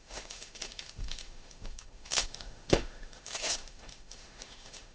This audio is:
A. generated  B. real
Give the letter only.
A